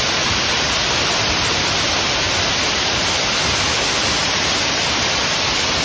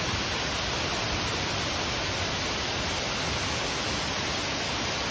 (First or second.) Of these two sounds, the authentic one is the second